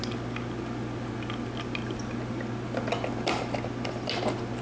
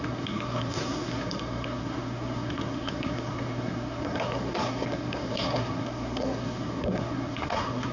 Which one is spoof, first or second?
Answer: second